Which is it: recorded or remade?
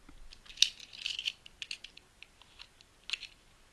recorded